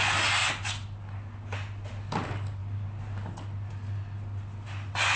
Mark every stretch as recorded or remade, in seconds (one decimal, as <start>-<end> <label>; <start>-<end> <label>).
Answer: 0.0-5.2 recorded